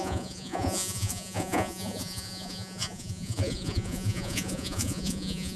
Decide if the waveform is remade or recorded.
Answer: remade